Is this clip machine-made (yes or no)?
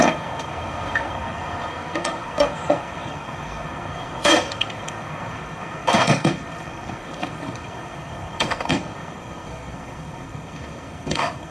yes